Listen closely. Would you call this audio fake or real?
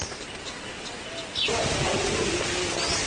real